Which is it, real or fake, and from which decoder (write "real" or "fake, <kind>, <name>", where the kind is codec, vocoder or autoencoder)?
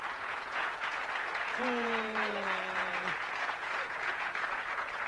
fake, vocoder, Vocos